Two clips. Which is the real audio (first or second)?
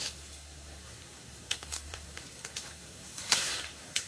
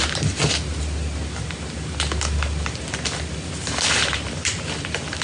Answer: second